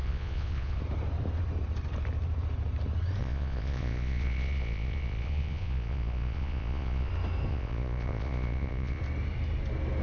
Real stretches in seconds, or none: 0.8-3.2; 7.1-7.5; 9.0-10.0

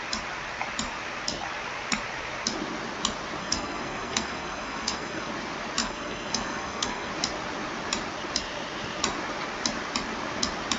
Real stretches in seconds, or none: 0.0-3.4; 5.3-5.8; 7.1-10.8

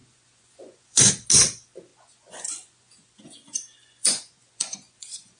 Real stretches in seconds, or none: 1.1-1.9

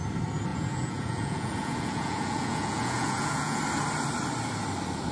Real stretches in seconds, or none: 0.0-0.5; 3.6-5.1

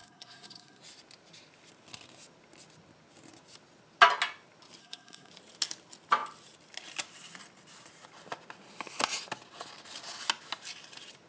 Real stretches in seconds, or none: 0.8-4.8; 5.3-11.3